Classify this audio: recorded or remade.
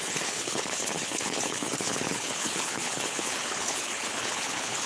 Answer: remade